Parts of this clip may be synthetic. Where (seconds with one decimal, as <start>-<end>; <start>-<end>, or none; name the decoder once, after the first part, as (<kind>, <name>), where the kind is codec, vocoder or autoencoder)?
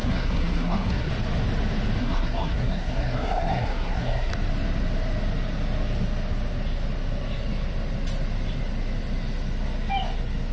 0.0-1.1 (codec, SNAC); 2.0-4.3